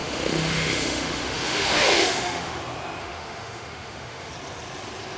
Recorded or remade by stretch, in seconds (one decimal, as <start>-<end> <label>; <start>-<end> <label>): 0.0-2.6 remade; 2.6-3.0 recorded; 3.0-4.3 remade; 4.3-5.2 recorded